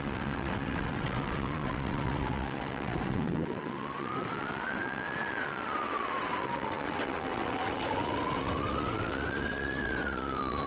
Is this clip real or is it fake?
fake